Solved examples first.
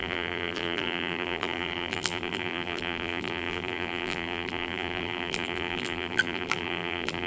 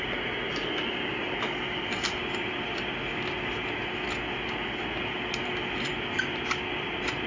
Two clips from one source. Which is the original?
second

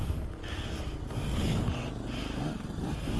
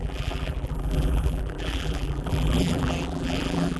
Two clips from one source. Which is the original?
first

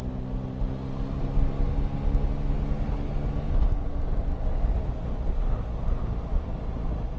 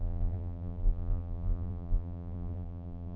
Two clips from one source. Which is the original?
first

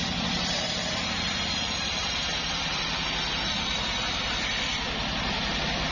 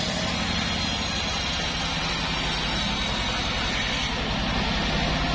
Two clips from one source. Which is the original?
second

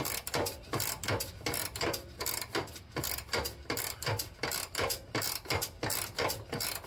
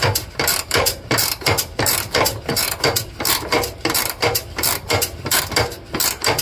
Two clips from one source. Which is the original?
first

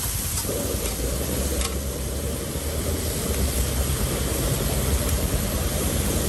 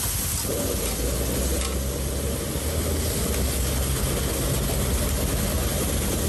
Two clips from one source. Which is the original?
second